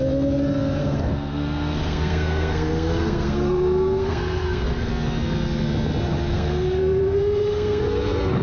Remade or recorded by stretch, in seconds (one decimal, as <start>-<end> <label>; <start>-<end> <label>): 0.0-0.8 recorded; 0.8-4.9 remade; 4.9-6.3 recorded; 6.3-7.8 remade; 7.8-8.4 recorded